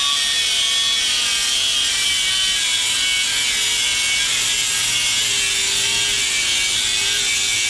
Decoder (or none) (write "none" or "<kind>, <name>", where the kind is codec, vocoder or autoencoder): none